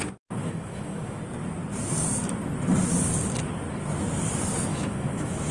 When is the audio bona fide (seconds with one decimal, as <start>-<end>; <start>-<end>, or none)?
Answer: 0.0-0.4; 1.2-4.7